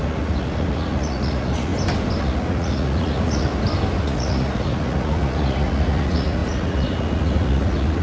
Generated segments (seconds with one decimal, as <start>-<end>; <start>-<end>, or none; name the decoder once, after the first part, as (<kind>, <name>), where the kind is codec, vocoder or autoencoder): 0.0-1.7 (vocoder, Vocos); 2.2-3.5; 4.0-8.0